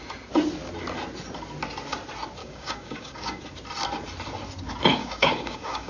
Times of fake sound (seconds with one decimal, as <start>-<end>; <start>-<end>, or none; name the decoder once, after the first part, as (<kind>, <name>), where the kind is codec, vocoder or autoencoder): 2.4-3.4 (codec, DAC); 5.0-5.9